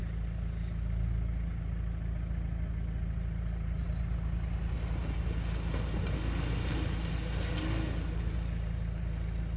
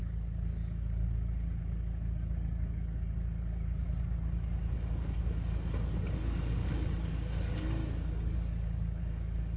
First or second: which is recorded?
first